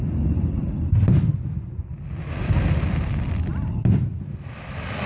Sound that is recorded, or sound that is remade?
recorded